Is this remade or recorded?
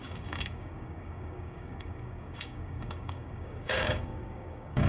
remade